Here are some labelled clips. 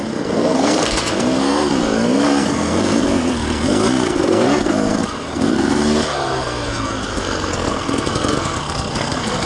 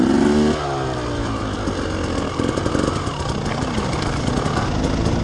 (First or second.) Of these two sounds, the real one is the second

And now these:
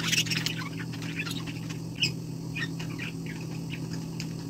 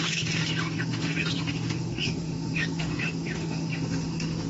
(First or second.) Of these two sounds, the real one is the first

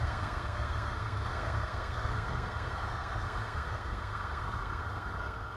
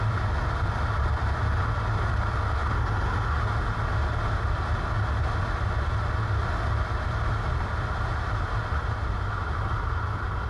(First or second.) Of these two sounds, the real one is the second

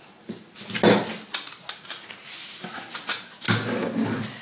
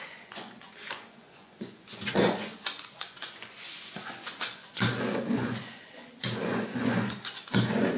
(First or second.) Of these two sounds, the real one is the first